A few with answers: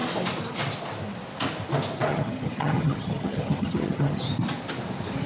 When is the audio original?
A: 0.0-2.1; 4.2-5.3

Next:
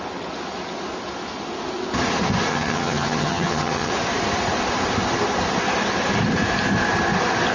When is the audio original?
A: 0.0-2.5; 3.9-7.5

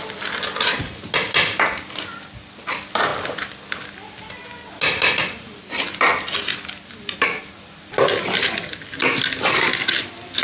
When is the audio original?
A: 0.0-10.4

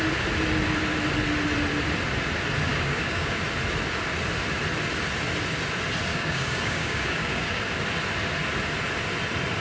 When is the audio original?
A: 0.0-2.7; 3.4-6.1; 7.6-9.6